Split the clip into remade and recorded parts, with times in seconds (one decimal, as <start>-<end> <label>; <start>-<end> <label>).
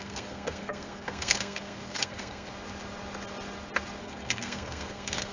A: 0.0-2.5 remade; 2.5-4.0 recorded; 4.0-5.3 remade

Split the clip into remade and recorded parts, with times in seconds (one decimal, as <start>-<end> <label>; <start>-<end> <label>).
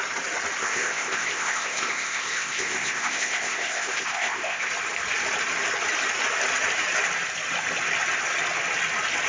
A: 0.0-0.6 recorded; 0.6-4.7 remade; 4.7-9.3 recorded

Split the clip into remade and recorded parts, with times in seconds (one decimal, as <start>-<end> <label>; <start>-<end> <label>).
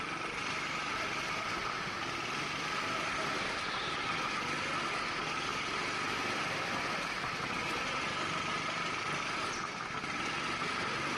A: 0.0-11.2 recorded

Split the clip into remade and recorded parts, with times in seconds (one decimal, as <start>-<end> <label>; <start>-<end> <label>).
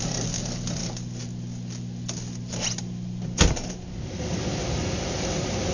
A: 0.0-5.7 recorded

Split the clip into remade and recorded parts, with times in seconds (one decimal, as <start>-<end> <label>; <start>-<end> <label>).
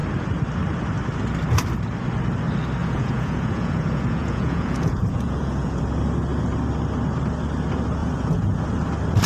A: 0.0-2.8 recorded; 2.8-5.8 remade; 5.8-8.0 recorded; 8.0-8.6 remade; 8.6-9.3 recorded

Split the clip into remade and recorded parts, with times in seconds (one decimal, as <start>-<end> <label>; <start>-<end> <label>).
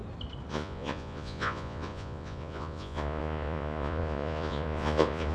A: 0.0-0.5 recorded; 0.5-5.3 remade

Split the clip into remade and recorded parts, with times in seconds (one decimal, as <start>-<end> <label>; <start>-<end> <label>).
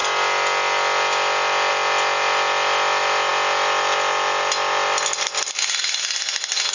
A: 0.0-6.7 recorded